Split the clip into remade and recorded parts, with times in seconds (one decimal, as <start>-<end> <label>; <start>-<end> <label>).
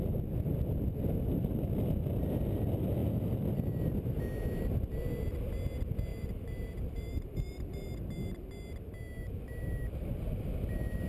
0.0-6.1 recorded; 6.1-8.0 remade; 8.0-11.1 recorded